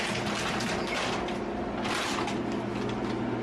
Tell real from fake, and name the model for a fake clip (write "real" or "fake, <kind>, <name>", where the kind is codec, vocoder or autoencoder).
real